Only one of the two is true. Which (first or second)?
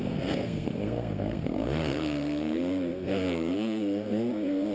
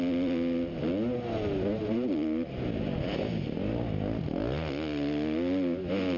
second